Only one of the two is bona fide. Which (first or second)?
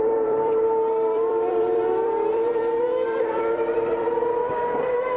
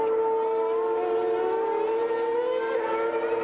second